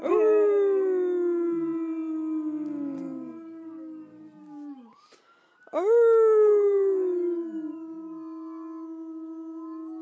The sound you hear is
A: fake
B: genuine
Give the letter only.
B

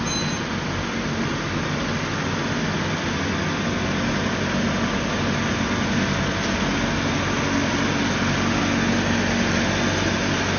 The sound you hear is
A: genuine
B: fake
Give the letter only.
A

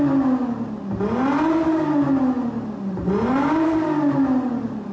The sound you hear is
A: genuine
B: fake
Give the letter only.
A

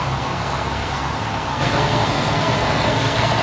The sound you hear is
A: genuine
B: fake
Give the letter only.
B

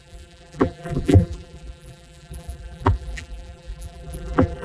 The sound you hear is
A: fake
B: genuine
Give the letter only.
A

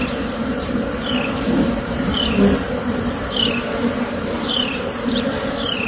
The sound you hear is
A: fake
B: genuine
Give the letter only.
A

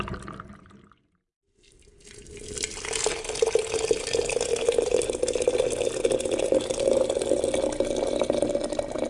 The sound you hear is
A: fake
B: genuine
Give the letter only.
B